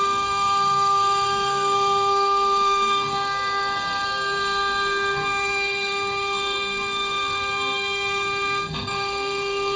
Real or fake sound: fake